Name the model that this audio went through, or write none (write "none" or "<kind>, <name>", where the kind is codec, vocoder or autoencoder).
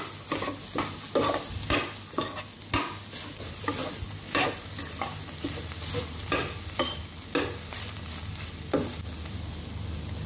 none